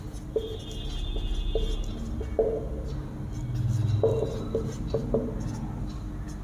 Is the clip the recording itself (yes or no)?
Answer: yes